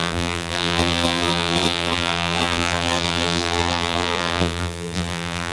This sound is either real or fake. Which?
fake